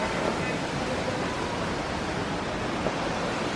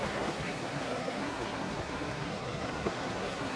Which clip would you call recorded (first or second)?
first